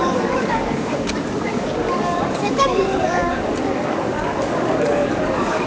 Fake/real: fake